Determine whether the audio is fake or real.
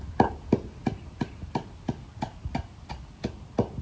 real